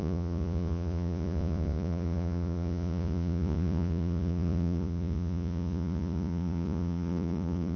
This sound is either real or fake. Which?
fake